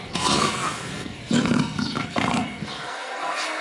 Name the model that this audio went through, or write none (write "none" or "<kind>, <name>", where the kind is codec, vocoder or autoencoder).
codec, SNAC